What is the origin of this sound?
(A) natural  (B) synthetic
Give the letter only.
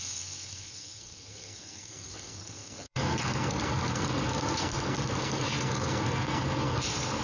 B